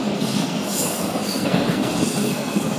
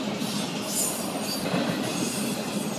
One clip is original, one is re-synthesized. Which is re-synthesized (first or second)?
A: first